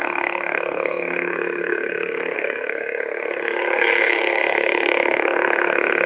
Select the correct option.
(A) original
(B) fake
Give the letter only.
B